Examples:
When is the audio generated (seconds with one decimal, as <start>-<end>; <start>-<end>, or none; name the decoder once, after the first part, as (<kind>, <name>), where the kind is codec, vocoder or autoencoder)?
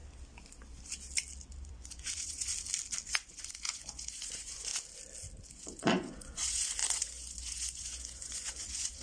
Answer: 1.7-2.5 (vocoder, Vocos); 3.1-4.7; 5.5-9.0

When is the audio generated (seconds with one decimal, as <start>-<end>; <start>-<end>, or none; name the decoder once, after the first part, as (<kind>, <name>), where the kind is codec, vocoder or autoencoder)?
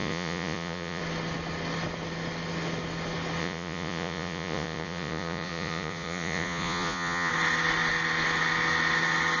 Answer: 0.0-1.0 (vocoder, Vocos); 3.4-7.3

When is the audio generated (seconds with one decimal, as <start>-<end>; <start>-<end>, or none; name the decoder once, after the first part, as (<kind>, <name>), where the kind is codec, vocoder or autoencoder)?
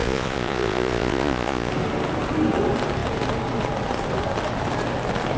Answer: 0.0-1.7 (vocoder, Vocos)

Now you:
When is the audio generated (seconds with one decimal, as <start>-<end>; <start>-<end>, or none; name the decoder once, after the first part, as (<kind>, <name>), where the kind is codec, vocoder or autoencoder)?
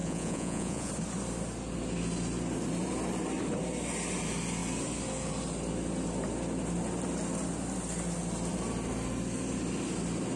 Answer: 0.0-0.9 (vocoder, Vocos)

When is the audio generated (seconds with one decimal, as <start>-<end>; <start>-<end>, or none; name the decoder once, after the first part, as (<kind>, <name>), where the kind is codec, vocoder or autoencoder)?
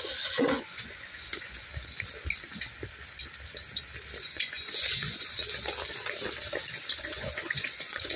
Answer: 0.0-1.7 (vocoder, Vocos); 4.2-5.4; 6.9-8.2